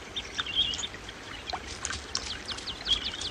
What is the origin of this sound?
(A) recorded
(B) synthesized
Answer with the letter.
A